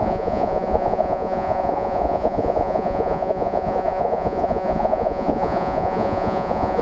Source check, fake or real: fake